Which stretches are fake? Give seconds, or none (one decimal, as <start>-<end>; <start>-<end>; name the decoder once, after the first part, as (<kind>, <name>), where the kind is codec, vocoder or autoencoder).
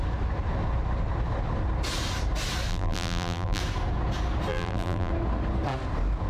2.7-3.6 (vocoder, BigVGAN v2); 4.5-5.1